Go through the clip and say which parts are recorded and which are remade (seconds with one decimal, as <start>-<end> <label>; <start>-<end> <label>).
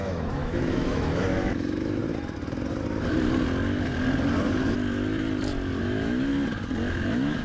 0.0-2.0 remade; 2.0-5.8 recorded; 5.8-6.3 remade; 6.3-6.9 recorded; 6.9-7.4 remade